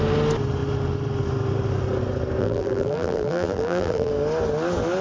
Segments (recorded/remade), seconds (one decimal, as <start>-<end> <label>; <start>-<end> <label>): 0.0-2.4 recorded; 2.4-4.1 remade; 4.1-5.0 recorded